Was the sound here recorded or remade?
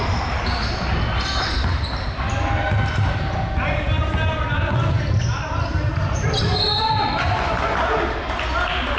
recorded